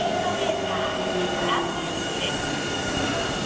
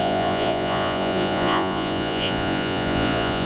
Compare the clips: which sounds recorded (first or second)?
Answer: first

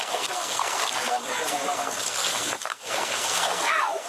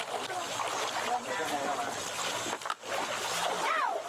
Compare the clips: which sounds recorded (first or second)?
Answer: second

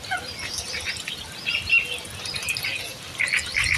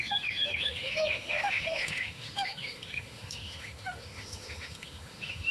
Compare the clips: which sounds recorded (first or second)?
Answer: first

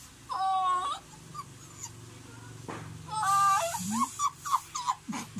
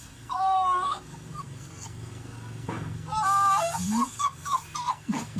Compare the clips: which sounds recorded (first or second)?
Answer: first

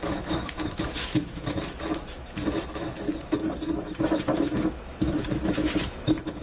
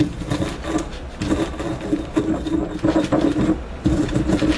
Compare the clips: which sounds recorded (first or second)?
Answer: second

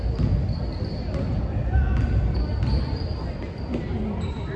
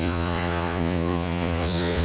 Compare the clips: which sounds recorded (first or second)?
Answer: first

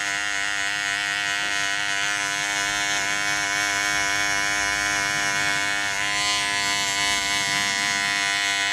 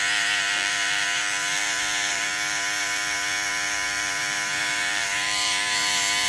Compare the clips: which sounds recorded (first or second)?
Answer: first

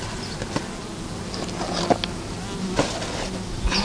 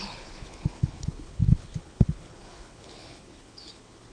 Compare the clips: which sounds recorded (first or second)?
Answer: first